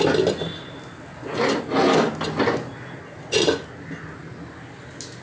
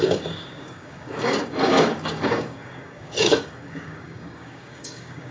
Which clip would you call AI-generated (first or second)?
second